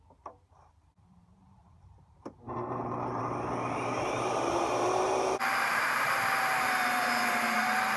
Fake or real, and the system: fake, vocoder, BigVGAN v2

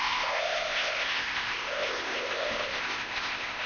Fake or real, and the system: fake, codec, ZipCodec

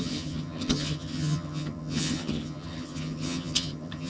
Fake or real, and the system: fake, vocoder, HiFi-GAN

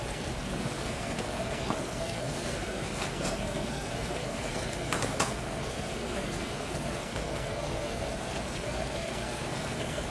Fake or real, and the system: fake, codec, SNAC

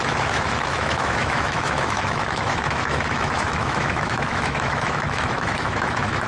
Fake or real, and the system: fake, autoencoder, DAC-VAE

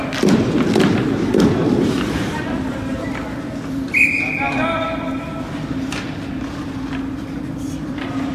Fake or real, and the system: fake, vocoder, BigVGAN v2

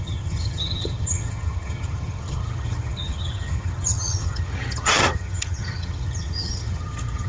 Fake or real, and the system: fake, vocoder, HiFi-GAN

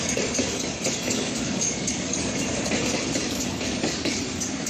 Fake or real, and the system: fake, codec, DAC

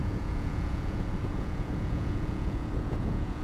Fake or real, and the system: fake, vocoder, Vocos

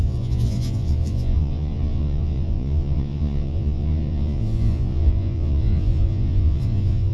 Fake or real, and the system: fake, vocoder, Vocos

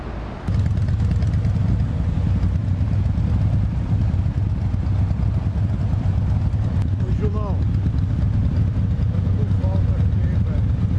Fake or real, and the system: real